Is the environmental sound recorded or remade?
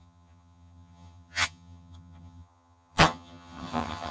remade